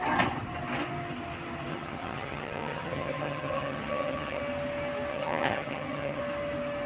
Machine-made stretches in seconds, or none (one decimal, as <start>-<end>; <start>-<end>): 1.7-4.4; 5.1-6.2